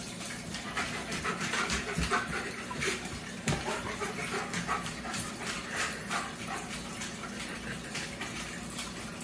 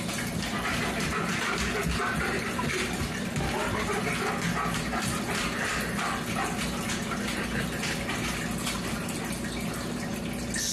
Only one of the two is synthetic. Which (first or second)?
first